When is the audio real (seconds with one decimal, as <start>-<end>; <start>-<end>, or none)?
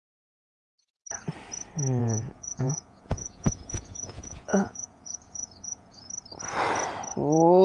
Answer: 0.0-2.0; 6.1-7.6